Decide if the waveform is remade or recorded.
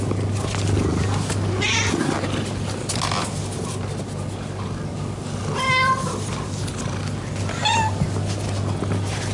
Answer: recorded